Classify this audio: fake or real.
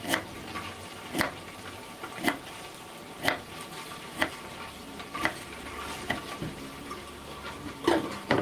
fake